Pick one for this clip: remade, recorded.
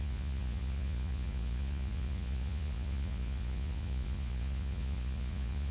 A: remade